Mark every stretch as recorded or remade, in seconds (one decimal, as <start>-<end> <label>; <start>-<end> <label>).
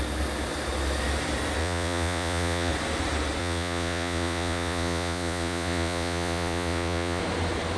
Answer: 0.0-1.6 recorded; 1.6-2.7 remade; 2.7-3.4 recorded; 3.4-7.2 remade; 7.2-7.8 recorded